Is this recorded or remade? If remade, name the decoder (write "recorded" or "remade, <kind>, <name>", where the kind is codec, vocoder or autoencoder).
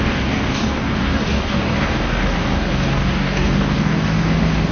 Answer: remade, codec, DAC